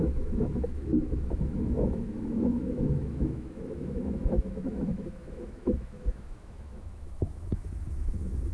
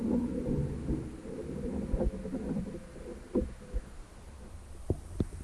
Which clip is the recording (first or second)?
second